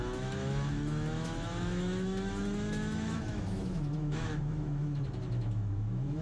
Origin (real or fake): fake